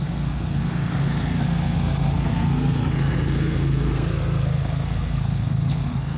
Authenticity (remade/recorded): remade